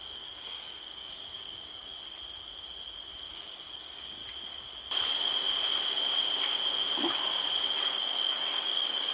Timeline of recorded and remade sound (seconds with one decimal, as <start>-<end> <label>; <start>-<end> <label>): 0.0-1.9 remade; 1.9-3.3 recorded; 3.3-4.2 remade; 4.2-7.8 recorded; 7.8-9.1 remade